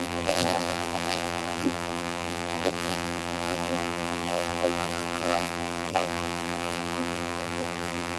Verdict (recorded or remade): remade